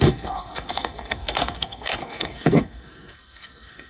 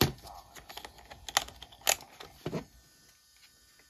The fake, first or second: first